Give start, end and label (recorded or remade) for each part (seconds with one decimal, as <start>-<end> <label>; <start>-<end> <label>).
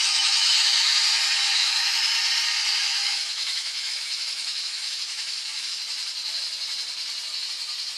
0.0-1.0 remade; 1.0-1.5 recorded; 1.5-2.0 remade; 2.0-2.8 recorded; 2.8-5.8 remade; 5.8-8.0 recorded